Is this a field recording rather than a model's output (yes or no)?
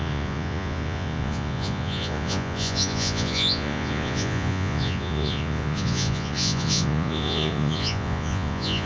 no